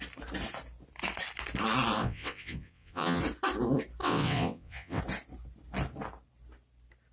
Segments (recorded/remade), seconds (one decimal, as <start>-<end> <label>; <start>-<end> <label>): 0.0-2.0 recorded; 2.0-3.2 remade; 3.2-4.0 recorded; 4.0-5.0 remade; 5.0-7.1 recorded